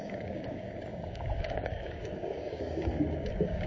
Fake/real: fake